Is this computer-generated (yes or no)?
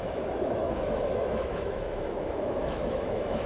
yes